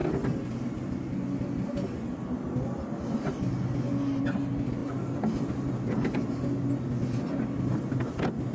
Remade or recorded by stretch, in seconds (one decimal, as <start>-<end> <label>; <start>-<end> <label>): 0.0-8.5 recorded